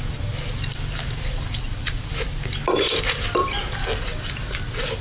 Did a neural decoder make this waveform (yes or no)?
yes